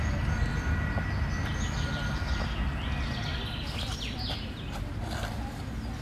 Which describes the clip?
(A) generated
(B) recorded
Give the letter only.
B